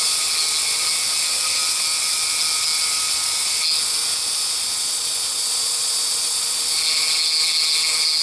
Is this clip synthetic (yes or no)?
no